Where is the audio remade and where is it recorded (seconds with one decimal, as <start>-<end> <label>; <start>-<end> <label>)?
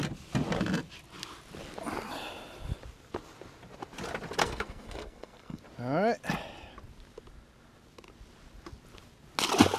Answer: 0.0-4.4 recorded; 4.4-5.6 remade; 5.6-9.8 recorded